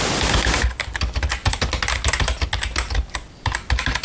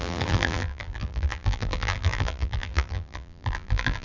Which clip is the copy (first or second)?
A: second